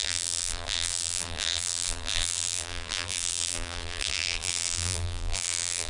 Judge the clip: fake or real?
fake